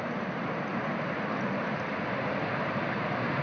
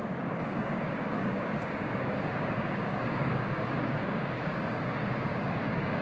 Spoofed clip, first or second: second